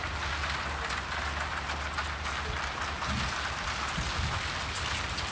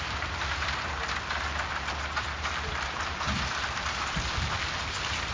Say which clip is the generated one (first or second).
second